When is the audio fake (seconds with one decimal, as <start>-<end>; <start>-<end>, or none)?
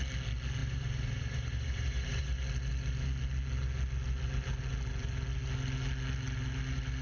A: 0.6-2.4